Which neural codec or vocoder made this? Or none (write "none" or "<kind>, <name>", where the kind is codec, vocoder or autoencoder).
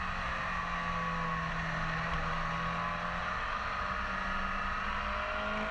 none